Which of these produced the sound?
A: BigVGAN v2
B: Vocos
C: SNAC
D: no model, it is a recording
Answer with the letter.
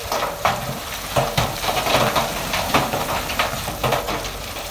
A